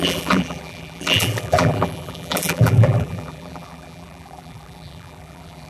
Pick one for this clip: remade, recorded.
remade